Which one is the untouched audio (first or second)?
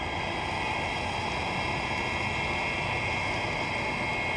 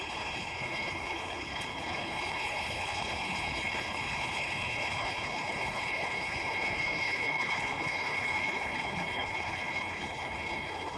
first